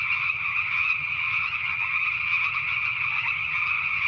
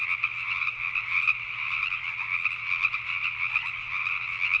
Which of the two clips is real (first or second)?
second